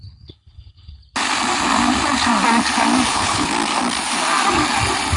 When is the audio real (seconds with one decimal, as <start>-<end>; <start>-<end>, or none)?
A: 1.0-3.1; 3.5-5.2